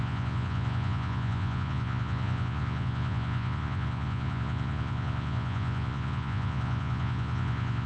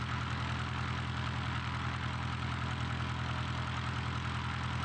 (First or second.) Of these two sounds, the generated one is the first